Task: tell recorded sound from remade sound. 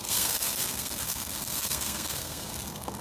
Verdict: remade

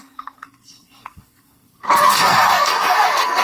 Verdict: remade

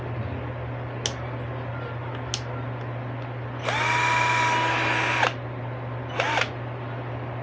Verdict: recorded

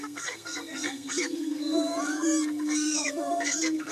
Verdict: remade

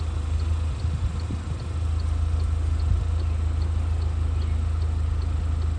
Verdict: recorded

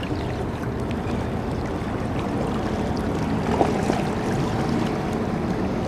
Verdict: recorded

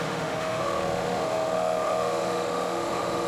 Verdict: remade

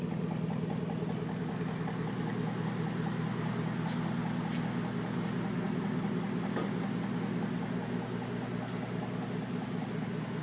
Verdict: recorded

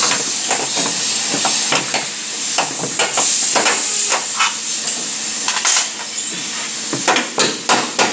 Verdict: recorded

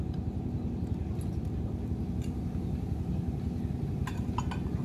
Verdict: recorded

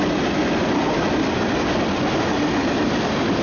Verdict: recorded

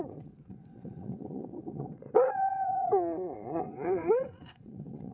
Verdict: remade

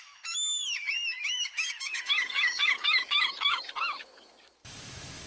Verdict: remade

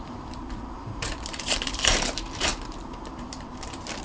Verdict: remade